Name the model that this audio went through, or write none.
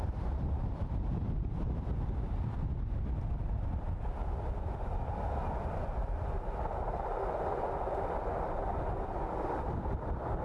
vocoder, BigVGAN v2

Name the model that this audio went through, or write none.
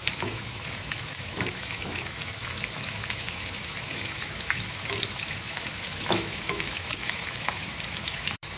autoencoder, DAC-VAE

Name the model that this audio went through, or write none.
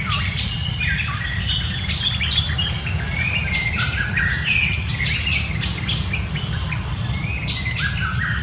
none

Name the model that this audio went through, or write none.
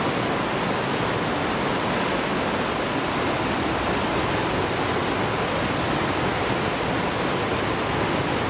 none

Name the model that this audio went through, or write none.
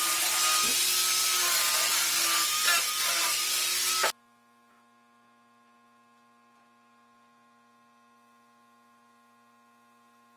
none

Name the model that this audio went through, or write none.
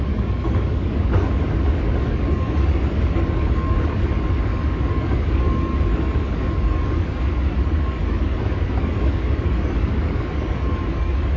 codec, DAC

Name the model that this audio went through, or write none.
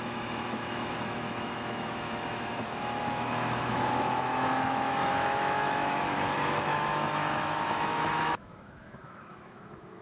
autoencoder, DAC-VAE